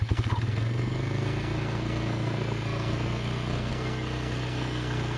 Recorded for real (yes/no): no